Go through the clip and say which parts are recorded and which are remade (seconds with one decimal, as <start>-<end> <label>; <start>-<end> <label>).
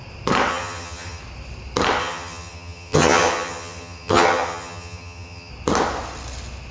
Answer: 0.0-0.5 recorded; 0.5-1.2 remade; 1.2-2.0 recorded; 2.0-5.5 remade; 5.5-6.7 recorded